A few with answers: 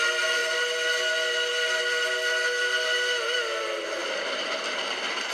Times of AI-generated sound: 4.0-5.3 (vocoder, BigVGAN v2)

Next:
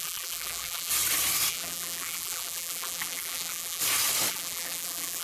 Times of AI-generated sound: 0.0-0.9 (vocoder, BigVGAN v2); 1.5-3.8; 4.3-5.2

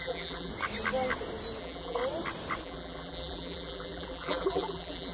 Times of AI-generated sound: 0.0-0.5 (vocoder, BigVGAN v2); 1.6-2.0; 2.6-5.1

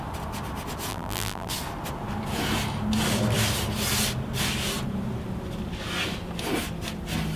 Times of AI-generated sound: 0.9-1.5 (vocoder, BigVGAN v2)